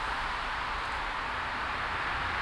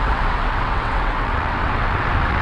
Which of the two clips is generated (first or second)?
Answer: second